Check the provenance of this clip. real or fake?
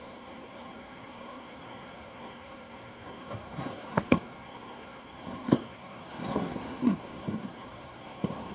fake